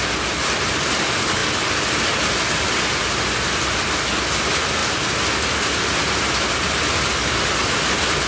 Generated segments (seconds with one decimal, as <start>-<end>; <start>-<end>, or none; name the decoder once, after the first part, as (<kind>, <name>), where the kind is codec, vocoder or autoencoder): none